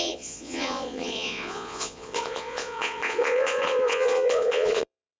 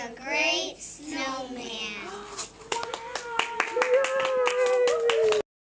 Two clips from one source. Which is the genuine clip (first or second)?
second